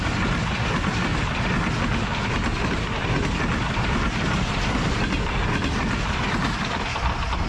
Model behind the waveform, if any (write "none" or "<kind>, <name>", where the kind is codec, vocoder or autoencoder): none